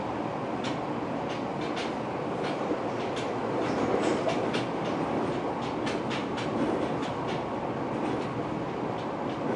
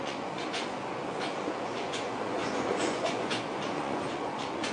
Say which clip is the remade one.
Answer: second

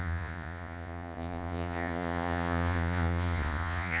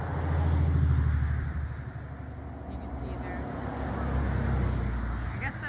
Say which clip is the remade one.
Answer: first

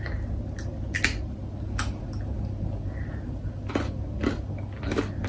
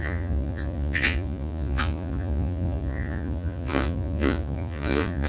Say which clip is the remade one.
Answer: second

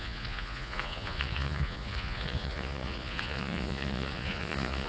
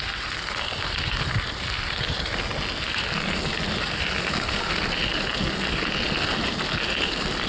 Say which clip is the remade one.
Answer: first